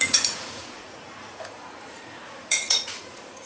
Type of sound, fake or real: fake